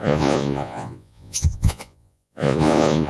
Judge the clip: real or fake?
fake